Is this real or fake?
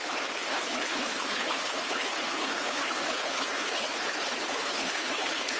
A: fake